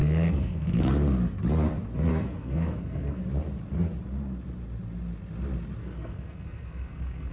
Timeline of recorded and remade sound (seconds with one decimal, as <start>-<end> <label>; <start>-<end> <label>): 0.0-0.8 remade; 0.8-2.1 recorded; 2.1-3.2 remade; 3.2-5.8 recorded; 5.8-7.3 remade

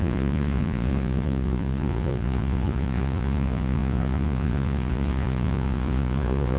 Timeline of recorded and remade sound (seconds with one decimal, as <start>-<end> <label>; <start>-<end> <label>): 0.0-6.6 remade